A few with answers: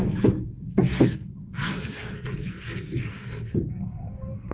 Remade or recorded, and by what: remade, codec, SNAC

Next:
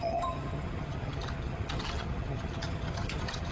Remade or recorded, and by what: remade, vocoder, HiFi-GAN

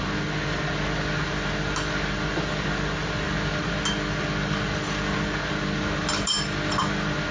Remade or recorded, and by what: recorded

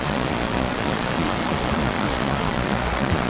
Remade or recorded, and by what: remade, vocoder, Vocos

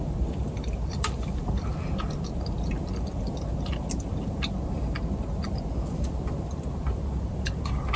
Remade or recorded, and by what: recorded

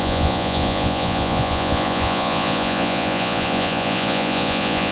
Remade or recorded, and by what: remade, vocoder, Vocos